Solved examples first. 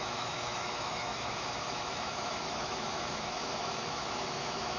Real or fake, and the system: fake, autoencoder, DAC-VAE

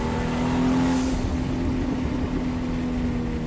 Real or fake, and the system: real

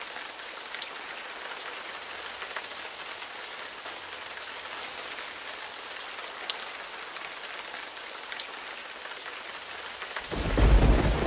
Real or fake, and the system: real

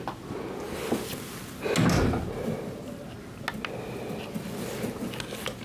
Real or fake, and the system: real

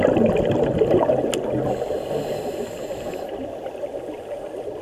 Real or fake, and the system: real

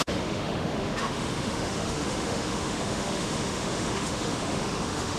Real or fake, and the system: fake, autoencoder, DAC-VAE